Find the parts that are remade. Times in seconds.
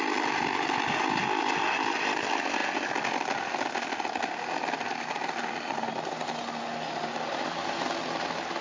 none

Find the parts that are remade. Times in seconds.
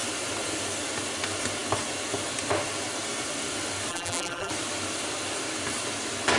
3.9-4.5 (vocoder, BigVGAN v2)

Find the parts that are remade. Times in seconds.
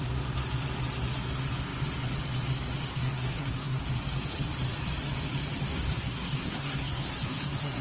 2.9-3.8 (codec, SNAC); 5.7-7.8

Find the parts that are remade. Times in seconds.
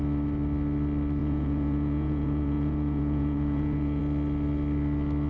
1.2-4.0 (vocoder, Vocos)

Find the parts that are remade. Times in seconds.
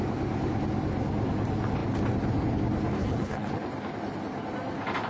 2.9-3.5 (codec, HILCodec)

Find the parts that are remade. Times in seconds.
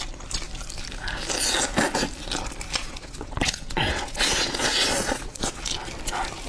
2.8-5.6 (vocoder, Vocos)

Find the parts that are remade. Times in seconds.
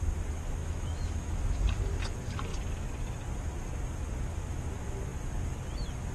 0.6-1.6 (autoencoder, DAC-VAE)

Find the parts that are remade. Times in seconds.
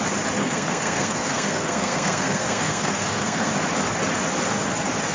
0.4-3.5 (codec, SNAC)